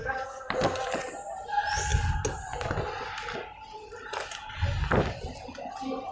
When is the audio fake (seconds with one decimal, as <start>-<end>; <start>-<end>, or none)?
0.0-0.5

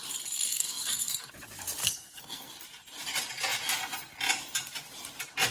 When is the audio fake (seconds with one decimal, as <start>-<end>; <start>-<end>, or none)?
0.5-1.3; 1.8-2.5

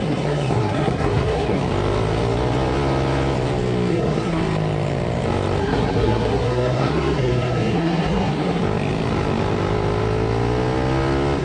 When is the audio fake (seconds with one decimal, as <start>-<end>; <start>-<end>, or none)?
0.0-1.6; 3.9-4.4; 5.6-8.6

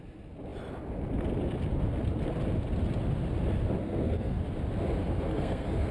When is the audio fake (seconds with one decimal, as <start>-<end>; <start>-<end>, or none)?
3.8-4.4; 5.0-5.9

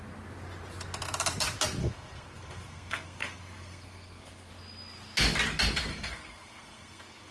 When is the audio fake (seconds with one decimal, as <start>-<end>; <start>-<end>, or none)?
1.8-4.5; 5.9-7.3

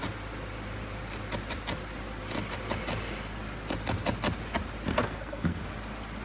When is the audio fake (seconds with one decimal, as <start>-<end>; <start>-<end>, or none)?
4.9-5.6

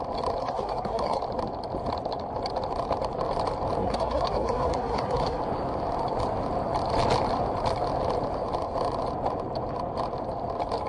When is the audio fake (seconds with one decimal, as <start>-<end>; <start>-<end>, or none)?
0.4-1.2; 3.8-5.4

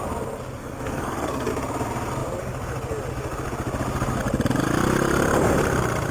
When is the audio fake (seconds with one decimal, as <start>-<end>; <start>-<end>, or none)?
0.6-1.5